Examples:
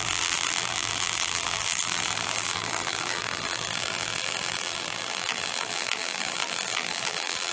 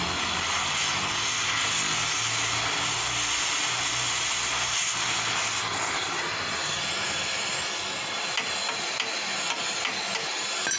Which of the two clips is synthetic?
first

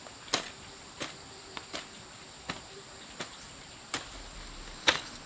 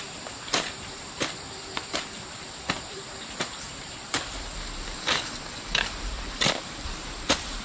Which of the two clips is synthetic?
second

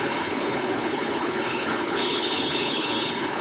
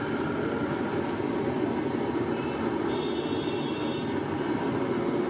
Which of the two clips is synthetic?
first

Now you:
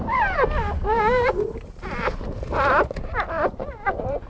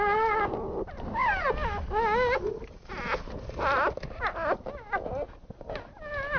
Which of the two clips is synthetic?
first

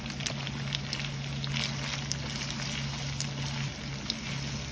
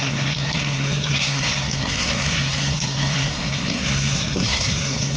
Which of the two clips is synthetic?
second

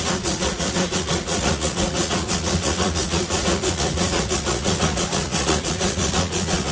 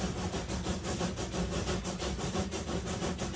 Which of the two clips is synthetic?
first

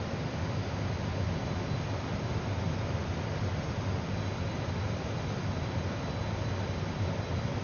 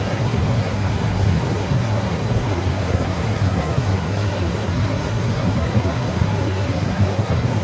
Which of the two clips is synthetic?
second